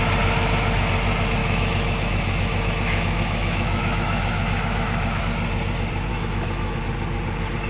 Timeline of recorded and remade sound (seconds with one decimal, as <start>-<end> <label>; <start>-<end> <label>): 0.0-1.4 recorded; 1.4-5.2 remade; 5.2-6.1 recorded; 6.1-6.8 remade; 6.8-7.7 recorded